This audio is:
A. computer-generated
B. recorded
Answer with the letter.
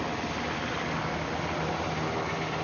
B